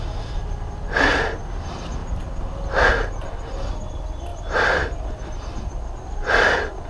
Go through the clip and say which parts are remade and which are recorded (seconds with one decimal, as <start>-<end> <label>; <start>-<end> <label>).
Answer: 0.0-4.3 recorded; 4.3-5.4 remade; 5.4-6.9 recorded